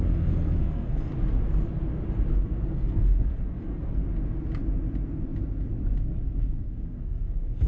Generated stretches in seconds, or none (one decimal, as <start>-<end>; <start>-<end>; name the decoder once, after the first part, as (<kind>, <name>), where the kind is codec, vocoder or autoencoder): 0.0-1.1 (codec, SNAC); 2.3-4.0; 6.4-7.7